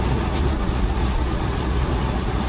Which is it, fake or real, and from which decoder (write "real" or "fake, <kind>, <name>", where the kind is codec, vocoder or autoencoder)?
fake, vocoder, Vocos